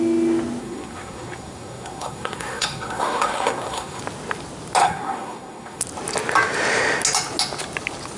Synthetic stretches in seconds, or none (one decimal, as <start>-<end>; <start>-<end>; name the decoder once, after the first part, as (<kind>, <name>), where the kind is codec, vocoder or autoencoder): 0.6-4.0 (codec, SNAC); 4.8-5.8